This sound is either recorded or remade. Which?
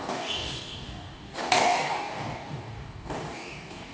remade